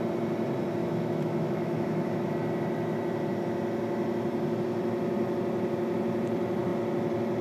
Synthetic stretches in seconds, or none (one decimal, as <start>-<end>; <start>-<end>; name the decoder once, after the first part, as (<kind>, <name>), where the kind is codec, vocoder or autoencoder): 0.8-2.3 (autoencoder, DAC-VAE)